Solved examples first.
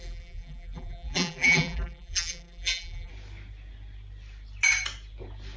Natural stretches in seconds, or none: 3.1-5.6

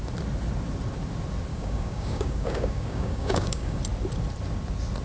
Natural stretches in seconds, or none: 0.0-1.5; 3.8-5.0

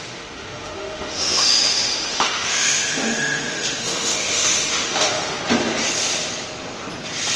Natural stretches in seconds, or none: 5.4-7.4